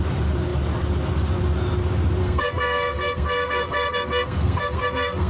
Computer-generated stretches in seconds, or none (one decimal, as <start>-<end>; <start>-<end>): 2.2-5.3